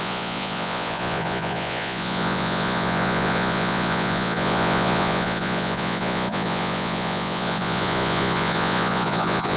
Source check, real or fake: fake